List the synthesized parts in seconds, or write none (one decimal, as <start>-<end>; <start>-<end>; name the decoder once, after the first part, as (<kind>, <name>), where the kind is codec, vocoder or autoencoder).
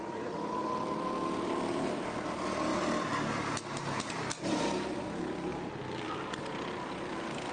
none